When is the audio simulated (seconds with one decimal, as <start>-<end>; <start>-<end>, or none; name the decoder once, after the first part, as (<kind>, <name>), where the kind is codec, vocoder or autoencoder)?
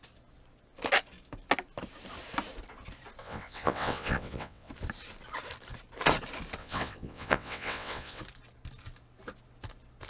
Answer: 3.2-4.7 (vocoder, WaveNeXt); 6.6-8.2